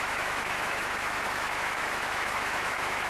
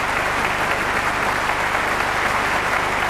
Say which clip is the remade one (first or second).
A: first